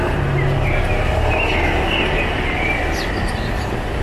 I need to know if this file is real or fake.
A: real